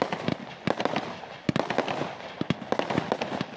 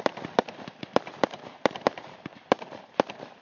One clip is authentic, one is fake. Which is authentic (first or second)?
first